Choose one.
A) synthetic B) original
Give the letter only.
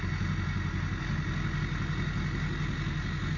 B